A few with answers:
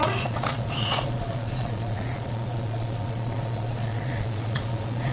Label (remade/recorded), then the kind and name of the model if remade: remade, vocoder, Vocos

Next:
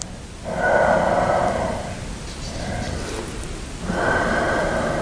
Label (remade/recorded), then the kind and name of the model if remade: recorded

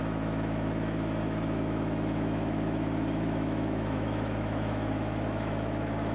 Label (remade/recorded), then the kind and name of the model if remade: remade, autoencoder, DAC-VAE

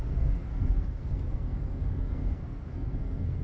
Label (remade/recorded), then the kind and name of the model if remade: remade, codec, SNAC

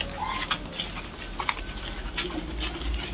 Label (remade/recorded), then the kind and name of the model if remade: recorded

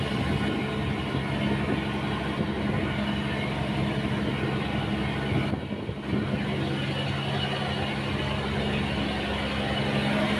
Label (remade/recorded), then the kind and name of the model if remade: recorded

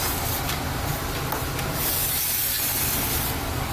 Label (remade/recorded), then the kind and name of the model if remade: recorded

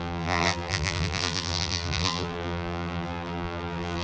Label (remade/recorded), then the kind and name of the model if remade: remade, vocoder, BigVGAN v2